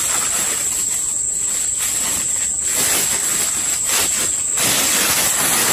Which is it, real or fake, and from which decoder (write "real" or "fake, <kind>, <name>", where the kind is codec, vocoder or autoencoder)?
real